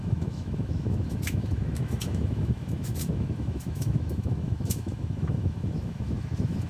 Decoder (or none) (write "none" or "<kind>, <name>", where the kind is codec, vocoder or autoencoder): autoencoder, DAC-VAE